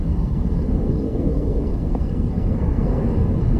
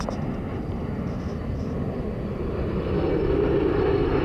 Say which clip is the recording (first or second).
second